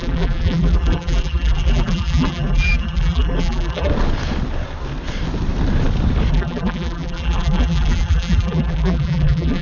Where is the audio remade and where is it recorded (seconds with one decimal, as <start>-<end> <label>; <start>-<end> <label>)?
0.0-3.9 remade; 3.9-6.3 recorded; 6.3-9.6 remade